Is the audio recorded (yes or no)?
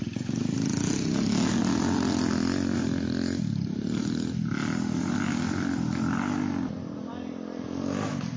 yes